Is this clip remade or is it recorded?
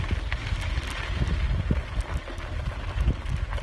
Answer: recorded